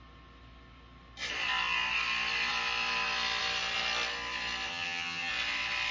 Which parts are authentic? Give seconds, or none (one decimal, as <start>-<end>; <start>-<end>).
0.0-4.7; 5.3-5.9